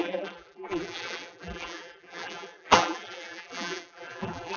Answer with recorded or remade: remade